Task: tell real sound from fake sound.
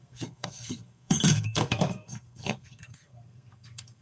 fake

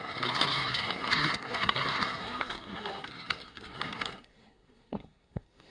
fake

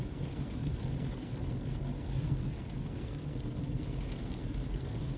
fake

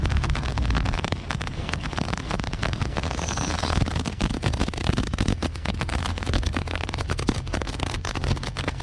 fake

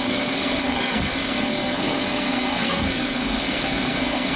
fake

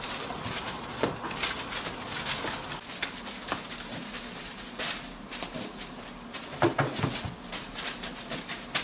real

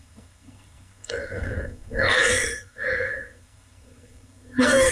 fake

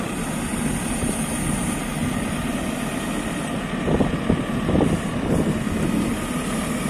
real